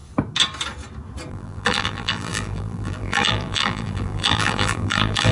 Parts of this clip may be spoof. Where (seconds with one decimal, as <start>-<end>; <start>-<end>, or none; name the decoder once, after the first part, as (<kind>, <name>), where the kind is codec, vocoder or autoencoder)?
1.3-5.3 (vocoder, BigVGAN v2)